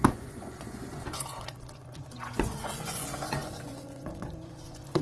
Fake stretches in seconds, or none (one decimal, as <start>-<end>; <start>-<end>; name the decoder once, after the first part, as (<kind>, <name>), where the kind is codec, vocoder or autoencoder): 0.0-5.0 (vocoder, Vocos)